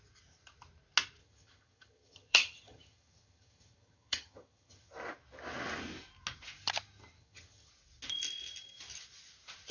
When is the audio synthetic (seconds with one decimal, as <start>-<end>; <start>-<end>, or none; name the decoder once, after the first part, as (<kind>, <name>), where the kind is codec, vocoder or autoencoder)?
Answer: 1.2-4.9 (vocoder, HiFi-GAN); 7.2-7.7

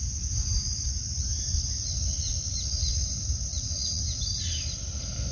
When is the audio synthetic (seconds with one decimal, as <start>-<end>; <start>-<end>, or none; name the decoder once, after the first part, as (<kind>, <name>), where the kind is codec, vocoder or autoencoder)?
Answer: 3.5-4.0 (vocoder, Vocos)

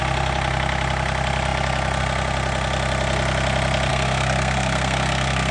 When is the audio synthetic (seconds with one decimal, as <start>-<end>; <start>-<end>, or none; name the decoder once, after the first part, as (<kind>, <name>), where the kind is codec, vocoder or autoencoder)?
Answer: 3.9-5.5 (codec, SNAC)

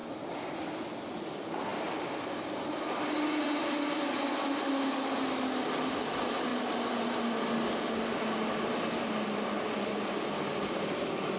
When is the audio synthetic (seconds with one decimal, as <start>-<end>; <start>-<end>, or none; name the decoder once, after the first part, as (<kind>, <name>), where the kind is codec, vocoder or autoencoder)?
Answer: none

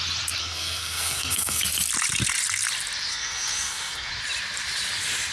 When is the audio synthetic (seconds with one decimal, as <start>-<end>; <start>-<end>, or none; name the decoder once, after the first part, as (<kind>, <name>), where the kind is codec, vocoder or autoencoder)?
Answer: 0.4-1.6 (codec, SNAC); 3.1-4.1

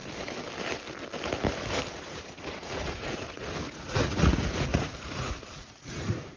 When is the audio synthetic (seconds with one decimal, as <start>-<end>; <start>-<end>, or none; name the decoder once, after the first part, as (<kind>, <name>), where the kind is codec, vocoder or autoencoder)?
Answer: 1.9-6.4 (vocoder, Vocos)

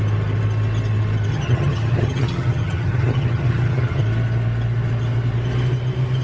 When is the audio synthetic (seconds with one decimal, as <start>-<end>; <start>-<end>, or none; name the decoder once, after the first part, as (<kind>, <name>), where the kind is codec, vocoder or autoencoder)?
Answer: 1.3-4.0 (vocoder, HiFi-GAN)